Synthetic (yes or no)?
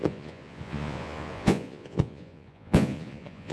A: yes